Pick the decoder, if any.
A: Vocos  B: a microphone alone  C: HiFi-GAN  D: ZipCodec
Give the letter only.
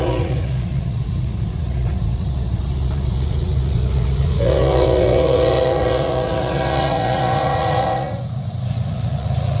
A